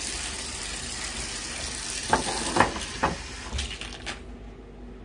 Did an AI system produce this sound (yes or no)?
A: no